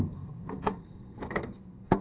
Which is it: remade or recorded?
remade